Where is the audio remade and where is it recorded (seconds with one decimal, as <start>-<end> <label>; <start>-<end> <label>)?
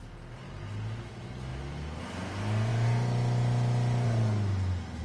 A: 0.0-5.0 recorded